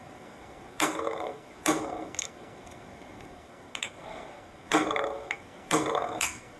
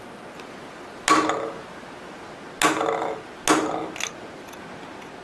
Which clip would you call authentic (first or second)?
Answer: second